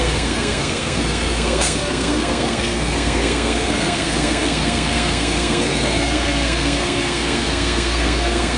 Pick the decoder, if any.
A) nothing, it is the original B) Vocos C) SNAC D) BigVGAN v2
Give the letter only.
C